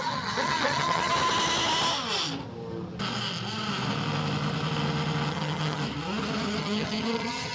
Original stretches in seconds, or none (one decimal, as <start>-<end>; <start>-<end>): 1.1-5.3; 5.8-6.6